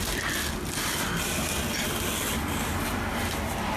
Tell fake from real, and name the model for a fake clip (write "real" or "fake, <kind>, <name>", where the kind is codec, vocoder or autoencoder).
real